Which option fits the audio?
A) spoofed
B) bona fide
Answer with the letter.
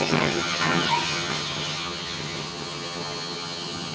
A